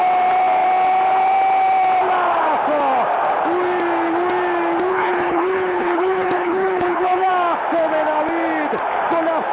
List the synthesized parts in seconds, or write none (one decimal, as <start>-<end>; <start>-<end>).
4.9-7.3